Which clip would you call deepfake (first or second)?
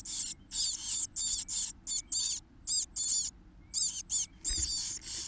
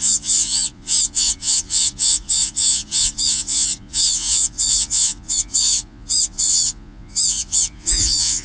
second